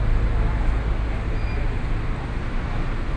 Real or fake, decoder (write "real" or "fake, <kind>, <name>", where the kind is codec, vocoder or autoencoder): real